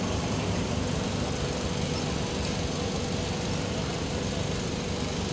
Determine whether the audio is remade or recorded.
recorded